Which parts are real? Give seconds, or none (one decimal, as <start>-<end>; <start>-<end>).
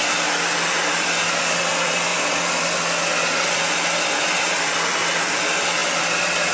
0.0-6.5